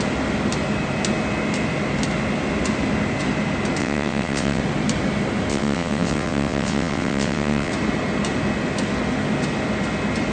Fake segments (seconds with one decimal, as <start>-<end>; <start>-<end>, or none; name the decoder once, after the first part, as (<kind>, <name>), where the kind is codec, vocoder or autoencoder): 3.8-4.6 (vocoder, WaveNeXt); 5.5-7.7